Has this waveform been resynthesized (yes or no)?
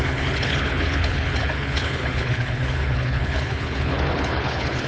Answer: yes